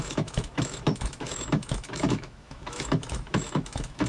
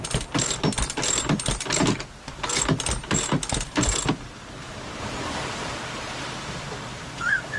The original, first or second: second